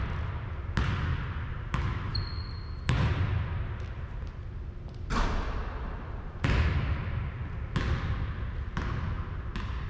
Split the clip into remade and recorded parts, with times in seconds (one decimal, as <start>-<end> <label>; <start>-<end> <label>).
0.0-9.9 recorded